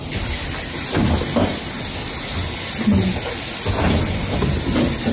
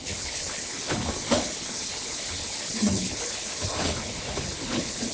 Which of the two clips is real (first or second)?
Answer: first